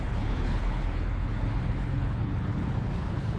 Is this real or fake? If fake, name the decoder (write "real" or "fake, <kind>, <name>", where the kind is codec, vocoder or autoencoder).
fake, codec, HILCodec